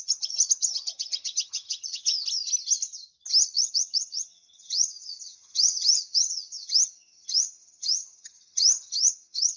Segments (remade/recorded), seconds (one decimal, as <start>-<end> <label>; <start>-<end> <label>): 0.0-2.1 remade; 2.1-3.4 recorded; 3.4-9.6 remade